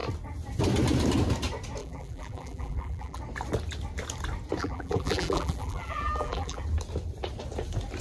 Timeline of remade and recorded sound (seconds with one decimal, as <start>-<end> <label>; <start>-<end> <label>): 0.0-1.8 recorded; 1.8-3.2 remade; 3.2-4.6 recorded; 4.6-6.6 remade; 6.6-8.0 recorded